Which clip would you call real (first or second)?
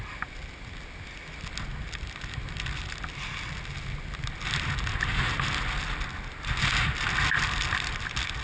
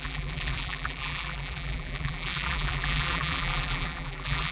first